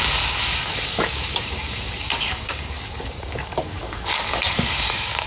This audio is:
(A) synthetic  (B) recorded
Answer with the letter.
A